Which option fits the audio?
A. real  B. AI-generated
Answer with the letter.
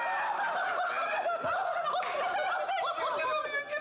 A